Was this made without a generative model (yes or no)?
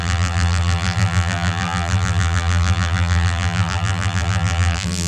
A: no